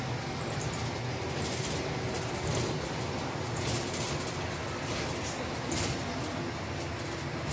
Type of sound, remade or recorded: recorded